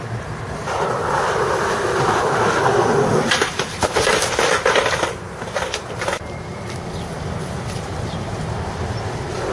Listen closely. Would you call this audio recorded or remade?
remade